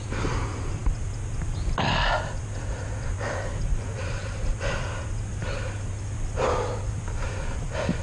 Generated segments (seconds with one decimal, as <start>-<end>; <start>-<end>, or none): none